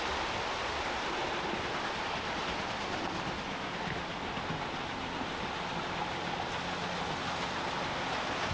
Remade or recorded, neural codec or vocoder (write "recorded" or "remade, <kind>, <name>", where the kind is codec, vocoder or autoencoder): recorded